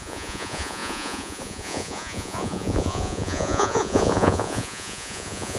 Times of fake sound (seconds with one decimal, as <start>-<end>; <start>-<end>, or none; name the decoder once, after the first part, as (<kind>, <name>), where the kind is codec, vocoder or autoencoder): 0.0-5.6 (vocoder, Vocos)